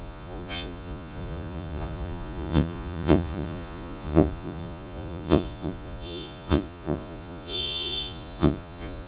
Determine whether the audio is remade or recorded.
remade